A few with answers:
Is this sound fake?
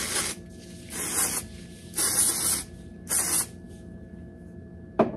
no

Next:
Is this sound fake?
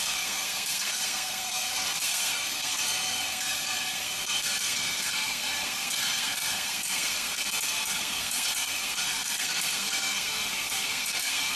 yes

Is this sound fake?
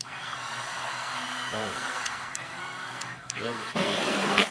yes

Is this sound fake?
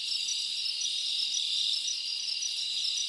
no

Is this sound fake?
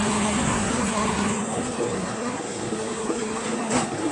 yes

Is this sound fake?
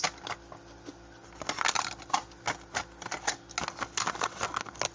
no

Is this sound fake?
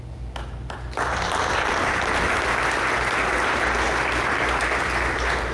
no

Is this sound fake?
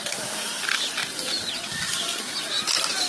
no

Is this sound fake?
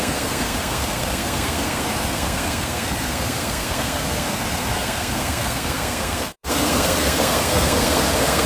yes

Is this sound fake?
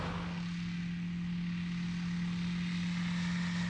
no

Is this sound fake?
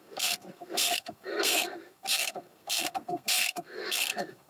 yes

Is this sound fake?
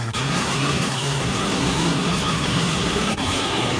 yes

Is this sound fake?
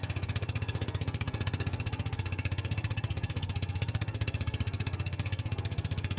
yes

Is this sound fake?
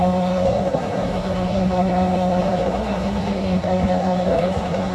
yes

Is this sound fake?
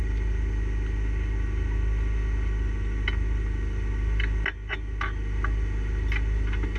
no